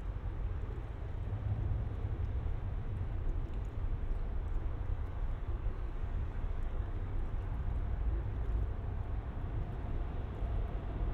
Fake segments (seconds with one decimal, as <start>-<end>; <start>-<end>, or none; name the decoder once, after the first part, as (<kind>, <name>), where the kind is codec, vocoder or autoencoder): 4.9-7.1 (codec, DAC)